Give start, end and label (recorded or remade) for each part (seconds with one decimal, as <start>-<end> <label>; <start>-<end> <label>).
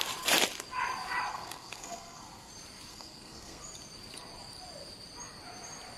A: 0.0-1.3 recorded; 1.3-2.5 remade; 2.5-2.9 recorded; 2.9-3.6 remade; 3.6-6.0 recorded